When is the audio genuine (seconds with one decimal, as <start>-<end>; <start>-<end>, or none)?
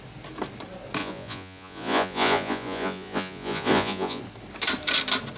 0.0-1.0; 4.2-5.4